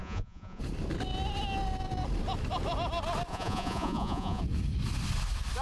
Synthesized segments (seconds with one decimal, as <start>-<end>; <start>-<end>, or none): 0.0-0.6; 3.3-4.4